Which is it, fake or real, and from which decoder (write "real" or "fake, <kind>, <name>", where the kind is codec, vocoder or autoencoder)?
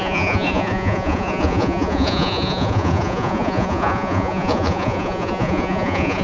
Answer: fake, vocoder, Vocos